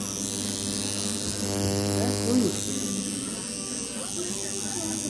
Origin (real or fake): real